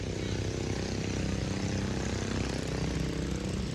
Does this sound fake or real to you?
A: real